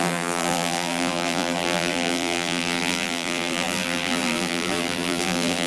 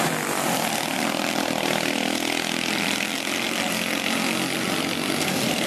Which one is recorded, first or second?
second